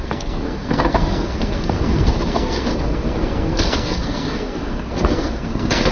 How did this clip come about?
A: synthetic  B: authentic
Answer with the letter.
A